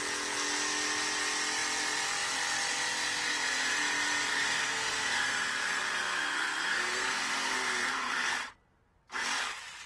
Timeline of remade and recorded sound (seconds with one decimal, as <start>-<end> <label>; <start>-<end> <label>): 0.0-4.3 recorded; 4.3-8.3 remade; 8.3-9.9 recorded